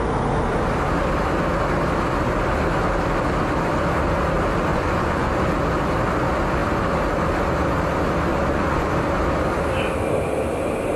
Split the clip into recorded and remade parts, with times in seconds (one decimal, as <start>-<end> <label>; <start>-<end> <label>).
0.0-4.7 recorded; 4.7-5.3 remade; 5.3-8.3 recorded; 8.3-8.9 remade; 8.9-11.0 recorded